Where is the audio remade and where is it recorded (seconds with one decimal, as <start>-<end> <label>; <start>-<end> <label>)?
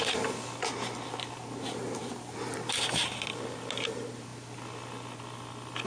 0.0-5.9 recorded